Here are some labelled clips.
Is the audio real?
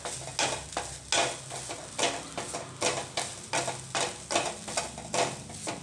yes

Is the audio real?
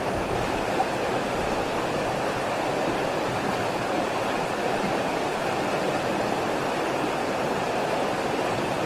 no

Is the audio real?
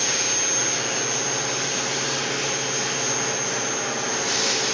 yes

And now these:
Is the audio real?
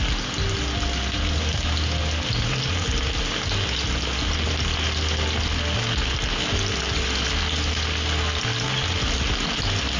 yes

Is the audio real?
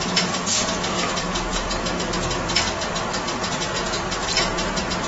yes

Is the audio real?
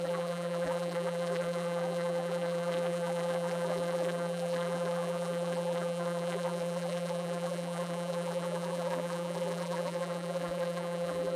no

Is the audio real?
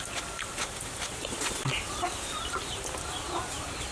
no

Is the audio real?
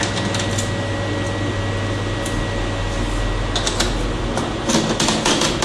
yes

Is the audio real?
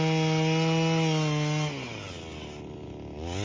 yes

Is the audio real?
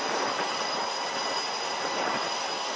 yes